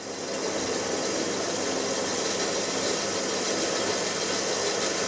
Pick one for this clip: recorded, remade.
recorded